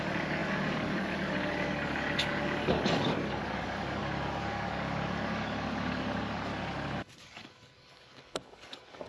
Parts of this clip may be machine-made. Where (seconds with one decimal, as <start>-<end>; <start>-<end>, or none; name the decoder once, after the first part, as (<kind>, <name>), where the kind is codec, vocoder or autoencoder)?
0.0-6.5 (codec, DAC); 7.2-9.1